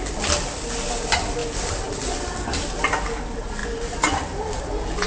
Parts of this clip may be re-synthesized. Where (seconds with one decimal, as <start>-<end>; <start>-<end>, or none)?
none